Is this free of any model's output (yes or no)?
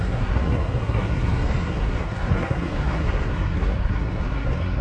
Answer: no